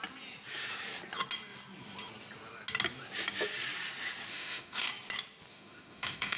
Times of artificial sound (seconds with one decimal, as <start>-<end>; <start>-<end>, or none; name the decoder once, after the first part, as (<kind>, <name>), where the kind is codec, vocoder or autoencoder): 4.3-4.9 (autoencoder, DAC-VAE); 5.5-6.4